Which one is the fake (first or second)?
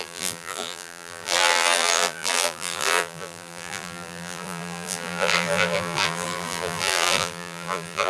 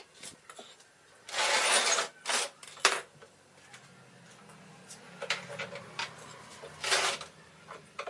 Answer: first